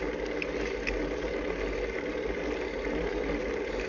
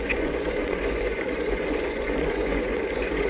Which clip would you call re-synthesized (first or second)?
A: second